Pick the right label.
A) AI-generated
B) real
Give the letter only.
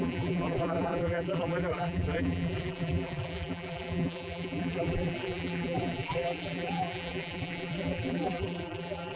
A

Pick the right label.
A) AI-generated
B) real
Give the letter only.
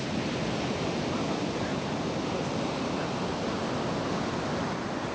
B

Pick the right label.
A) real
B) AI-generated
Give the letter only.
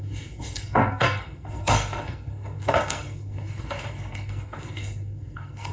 B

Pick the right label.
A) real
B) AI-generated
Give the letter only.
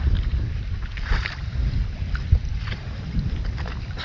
A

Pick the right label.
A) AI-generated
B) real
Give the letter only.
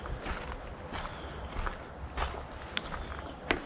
B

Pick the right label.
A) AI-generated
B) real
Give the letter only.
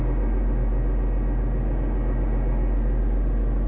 B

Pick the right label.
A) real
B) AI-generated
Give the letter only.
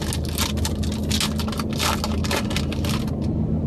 A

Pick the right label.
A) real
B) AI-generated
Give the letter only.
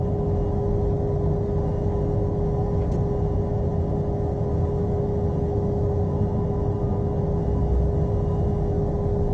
A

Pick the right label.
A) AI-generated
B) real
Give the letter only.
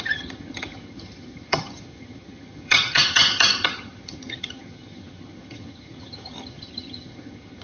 A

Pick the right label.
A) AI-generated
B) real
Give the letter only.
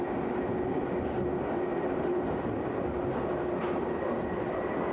B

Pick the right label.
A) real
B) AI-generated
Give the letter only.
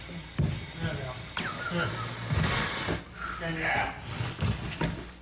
A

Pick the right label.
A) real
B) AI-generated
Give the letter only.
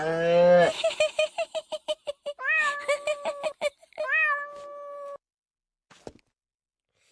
A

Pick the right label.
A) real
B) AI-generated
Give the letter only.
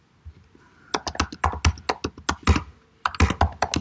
A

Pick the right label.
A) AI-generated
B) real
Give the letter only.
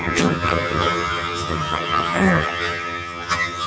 A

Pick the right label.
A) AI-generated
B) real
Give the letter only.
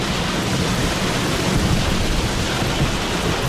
B